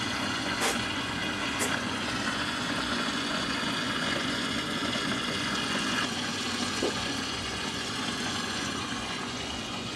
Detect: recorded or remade remade